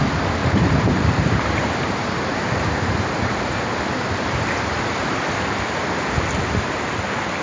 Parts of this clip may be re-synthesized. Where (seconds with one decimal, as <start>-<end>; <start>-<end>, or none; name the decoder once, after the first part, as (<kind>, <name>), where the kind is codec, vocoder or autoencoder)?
0.4-4.8 (vocoder, BigVGAN v2)